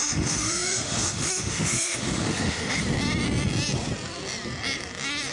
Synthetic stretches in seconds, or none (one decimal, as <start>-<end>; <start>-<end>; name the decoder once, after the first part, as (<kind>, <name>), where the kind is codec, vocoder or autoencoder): 0.0-2.8 (autoencoder, DAC-VAE)